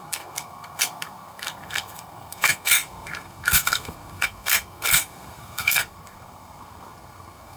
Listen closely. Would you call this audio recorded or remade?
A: remade